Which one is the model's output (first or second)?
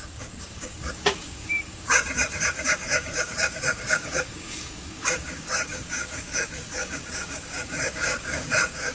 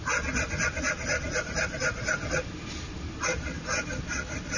first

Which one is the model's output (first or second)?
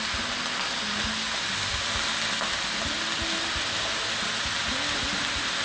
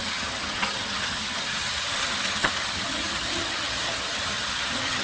second